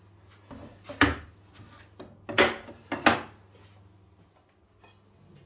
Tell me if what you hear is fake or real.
real